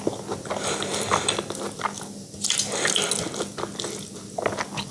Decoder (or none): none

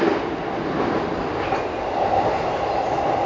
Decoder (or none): none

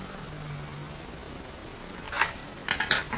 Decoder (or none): none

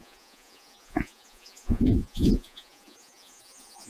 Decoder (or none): vocoder, Vocos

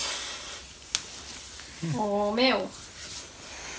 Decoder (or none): none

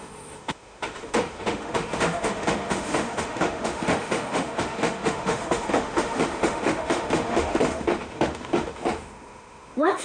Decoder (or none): autoencoder, DAC-VAE